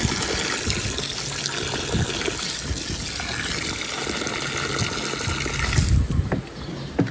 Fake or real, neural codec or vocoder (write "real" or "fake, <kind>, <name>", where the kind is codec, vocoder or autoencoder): real